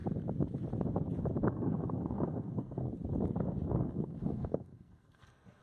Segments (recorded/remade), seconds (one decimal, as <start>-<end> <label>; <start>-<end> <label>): 0.0-1.5 recorded; 1.5-2.9 remade; 2.9-3.7 recorded; 3.7-5.6 remade